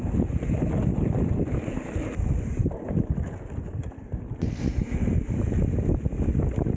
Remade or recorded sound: recorded